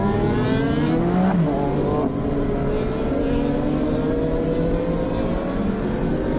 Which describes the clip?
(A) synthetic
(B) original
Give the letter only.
B